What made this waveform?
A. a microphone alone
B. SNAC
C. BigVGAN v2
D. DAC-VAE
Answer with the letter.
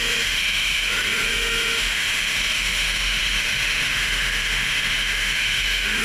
D